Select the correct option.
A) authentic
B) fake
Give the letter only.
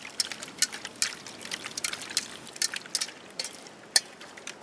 A